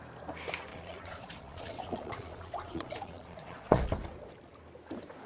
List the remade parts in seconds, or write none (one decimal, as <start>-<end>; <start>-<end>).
0.7-3.9